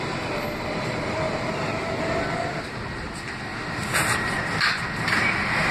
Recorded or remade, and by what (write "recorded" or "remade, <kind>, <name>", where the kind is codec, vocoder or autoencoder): recorded